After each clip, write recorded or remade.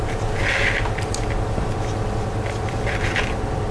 recorded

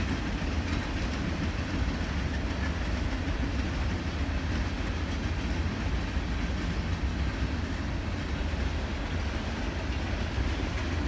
recorded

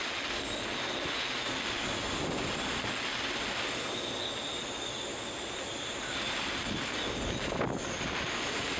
recorded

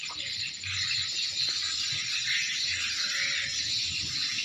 recorded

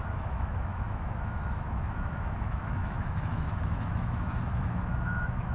remade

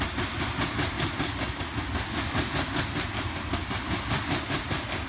recorded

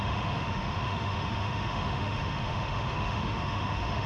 remade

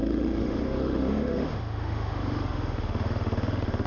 remade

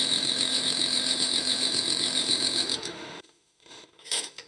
remade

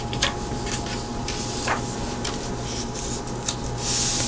recorded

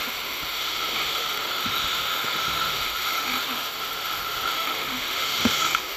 remade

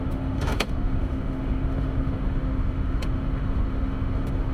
remade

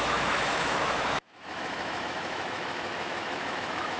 remade